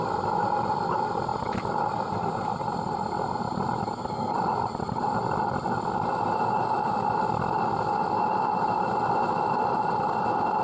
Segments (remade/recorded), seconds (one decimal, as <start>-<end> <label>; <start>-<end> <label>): 0.0-10.6 recorded